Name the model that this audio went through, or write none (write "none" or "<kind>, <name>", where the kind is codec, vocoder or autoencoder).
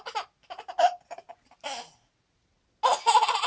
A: none